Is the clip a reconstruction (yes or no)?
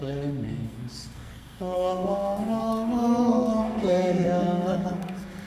yes